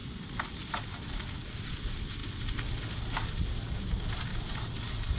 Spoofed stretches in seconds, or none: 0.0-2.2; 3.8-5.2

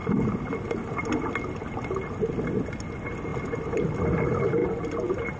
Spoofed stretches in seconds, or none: none

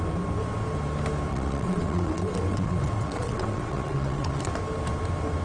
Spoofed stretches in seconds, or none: 1.3-4.5

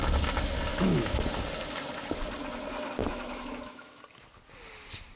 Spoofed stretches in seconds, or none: 0.7-1.2; 3.0-4.0